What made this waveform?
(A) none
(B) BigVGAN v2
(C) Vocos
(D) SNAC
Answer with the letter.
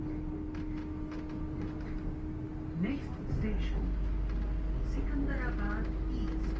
A